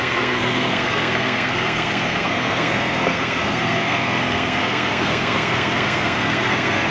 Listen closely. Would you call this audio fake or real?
fake